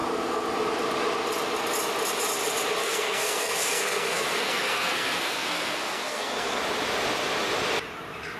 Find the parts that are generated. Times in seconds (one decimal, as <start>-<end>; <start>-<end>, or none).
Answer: 2.8-6.6